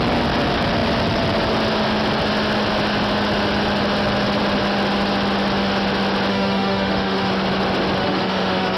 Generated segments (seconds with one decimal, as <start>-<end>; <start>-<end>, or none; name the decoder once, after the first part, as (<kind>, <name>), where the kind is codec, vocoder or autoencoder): 6.3-7.3 (autoencoder, DAC-VAE); 8.0-8.8